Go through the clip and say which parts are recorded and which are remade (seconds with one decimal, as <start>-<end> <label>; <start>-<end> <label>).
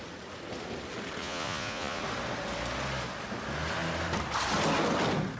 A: 0.0-1.2 recorded; 1.2-2.0 remade; 2.0-5.4 recorded